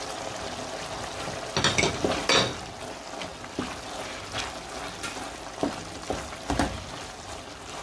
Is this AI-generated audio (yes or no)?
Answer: no